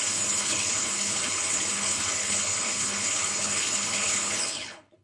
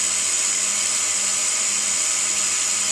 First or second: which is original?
second